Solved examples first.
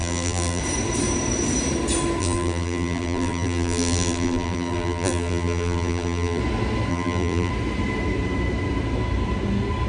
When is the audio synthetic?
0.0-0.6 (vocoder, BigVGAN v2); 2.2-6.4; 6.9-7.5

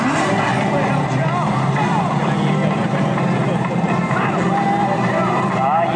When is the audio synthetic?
2.8-5.5 (vocoder, BigVGAN v2)

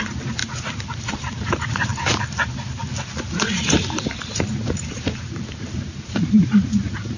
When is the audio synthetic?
0.0-7.2 (vocoder, BigVGAN v2)

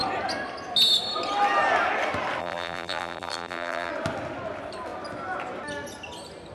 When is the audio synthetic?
2.4-3.9 (vocoder, BigVGAN v2)

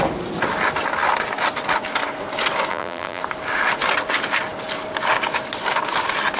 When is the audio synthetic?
2.7-3.2 (vocoder, BigVGAN v2)

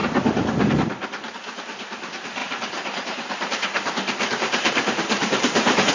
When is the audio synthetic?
2.4-5.9 (vocoder, BigVGAN v2)

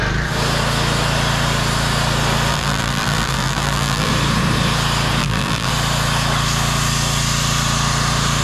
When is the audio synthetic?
2.5-4.1 (vocoder, BigVGAN v2); 5.2-5.7